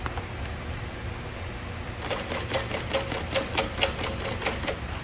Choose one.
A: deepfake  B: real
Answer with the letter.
B